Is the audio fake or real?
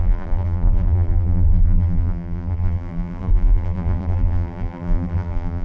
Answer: fake